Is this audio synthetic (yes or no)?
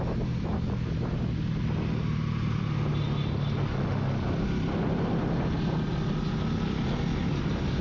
no